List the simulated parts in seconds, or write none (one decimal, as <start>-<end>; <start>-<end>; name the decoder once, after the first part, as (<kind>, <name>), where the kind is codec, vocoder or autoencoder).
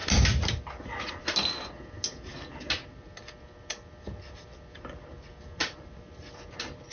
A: none